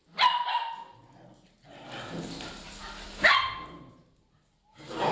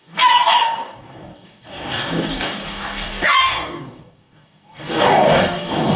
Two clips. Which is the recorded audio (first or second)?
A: first